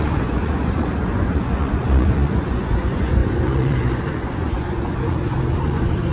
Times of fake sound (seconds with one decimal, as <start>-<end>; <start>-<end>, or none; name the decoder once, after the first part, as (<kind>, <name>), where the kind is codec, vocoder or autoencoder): 0.0-6.1 (vocoder, Vocos)